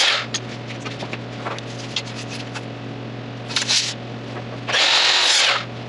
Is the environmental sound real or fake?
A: real